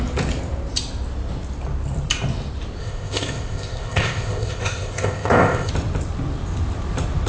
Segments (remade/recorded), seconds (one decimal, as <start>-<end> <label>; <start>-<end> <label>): 0.0-2.8 recorded; 2.8-5.7 remade; 5.7-7.3 recorded